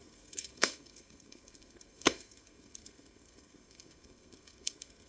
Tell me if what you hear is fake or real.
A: fake